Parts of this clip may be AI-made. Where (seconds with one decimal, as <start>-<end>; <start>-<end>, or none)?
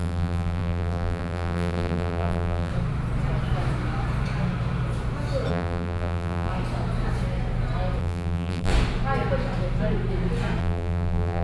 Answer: 0.0-2.7; 5.5-6.5; 8.0-8.7; 10.6-11.4